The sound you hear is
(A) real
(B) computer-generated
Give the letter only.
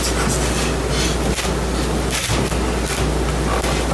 A